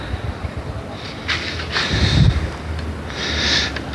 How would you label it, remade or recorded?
remade